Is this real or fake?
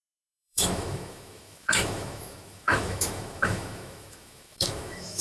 fake